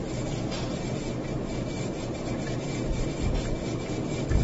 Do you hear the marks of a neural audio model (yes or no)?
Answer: no